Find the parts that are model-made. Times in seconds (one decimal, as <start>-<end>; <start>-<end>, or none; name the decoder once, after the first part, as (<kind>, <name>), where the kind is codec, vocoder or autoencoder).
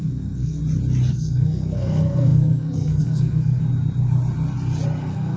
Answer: 0.0-0.6 (codec, SNAC); 1.1-3.6; 5.0-5.4